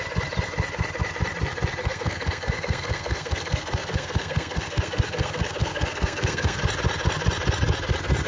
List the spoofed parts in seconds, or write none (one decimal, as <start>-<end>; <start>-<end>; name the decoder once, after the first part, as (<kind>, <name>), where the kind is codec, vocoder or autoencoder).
1.8-6.6 (codec, SNAC)

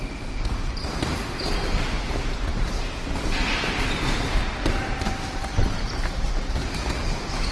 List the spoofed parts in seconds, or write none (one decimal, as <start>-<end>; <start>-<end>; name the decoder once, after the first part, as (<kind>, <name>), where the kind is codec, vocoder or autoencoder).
none

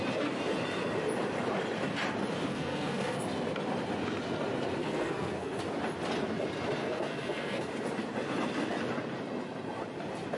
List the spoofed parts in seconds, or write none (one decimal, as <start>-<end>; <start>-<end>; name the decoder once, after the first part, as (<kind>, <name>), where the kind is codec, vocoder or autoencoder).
2.5-3.2 (codec, SNAC); 4.8-5.6; 6.8-7.7

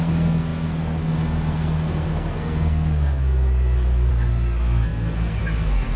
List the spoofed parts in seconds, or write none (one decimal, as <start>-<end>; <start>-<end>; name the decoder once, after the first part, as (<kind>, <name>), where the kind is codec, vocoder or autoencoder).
0.0-6.0 (codec, SNAC)